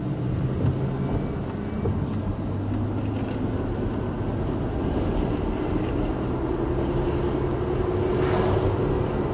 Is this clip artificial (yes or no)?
no